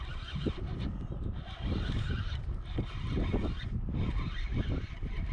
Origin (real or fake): real